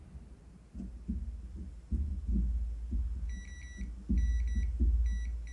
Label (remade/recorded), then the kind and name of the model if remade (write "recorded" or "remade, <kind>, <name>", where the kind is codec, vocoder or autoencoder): recorded